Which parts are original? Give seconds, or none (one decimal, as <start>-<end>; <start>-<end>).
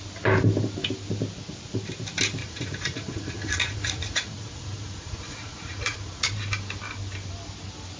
0.0-2.4; 6.3-8.0